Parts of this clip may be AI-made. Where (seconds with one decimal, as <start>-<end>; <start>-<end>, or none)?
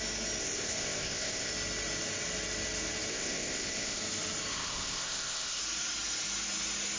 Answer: 0.4-1.5; 3.1-4.0; 4.5-5.6